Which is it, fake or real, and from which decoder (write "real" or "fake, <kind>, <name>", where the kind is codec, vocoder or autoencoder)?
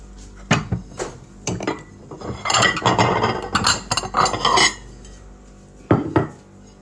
real